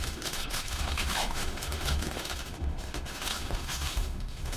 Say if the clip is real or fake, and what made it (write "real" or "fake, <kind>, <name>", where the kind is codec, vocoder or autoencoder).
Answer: fake, autoencoder, DAC-VAE